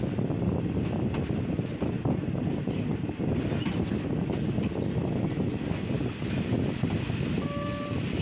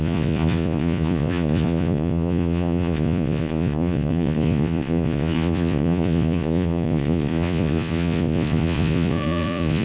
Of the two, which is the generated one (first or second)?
second